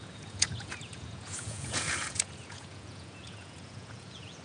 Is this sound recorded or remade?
remade